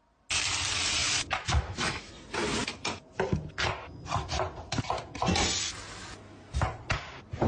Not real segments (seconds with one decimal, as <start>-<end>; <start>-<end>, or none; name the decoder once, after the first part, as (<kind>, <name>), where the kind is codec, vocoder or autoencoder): 1.0-2.1 (autoencoder, DAC-VAE)